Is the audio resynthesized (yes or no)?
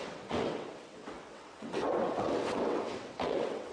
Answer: yes